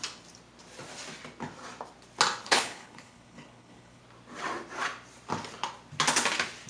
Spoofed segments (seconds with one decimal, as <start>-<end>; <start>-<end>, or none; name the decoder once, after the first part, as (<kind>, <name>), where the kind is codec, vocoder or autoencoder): 2.4-4.0 (codec, HILCodec)